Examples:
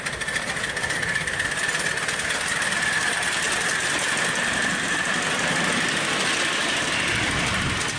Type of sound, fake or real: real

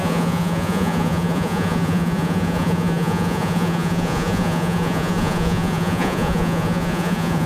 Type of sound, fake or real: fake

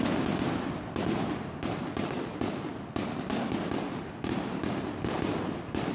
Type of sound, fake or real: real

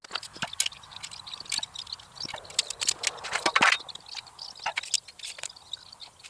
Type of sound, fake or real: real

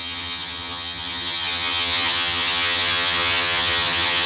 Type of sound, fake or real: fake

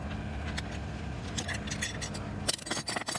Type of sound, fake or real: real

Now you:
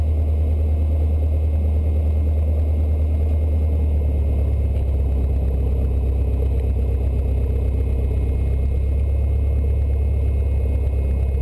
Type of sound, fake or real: real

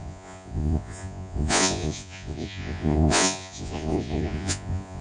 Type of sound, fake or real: fake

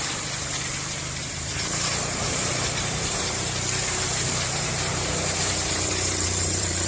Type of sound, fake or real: fake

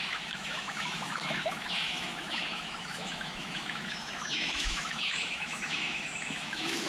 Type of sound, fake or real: fake